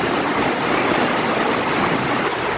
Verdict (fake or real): real